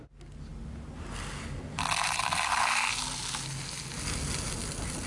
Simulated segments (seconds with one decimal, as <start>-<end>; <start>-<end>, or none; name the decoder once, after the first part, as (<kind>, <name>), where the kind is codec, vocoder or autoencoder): none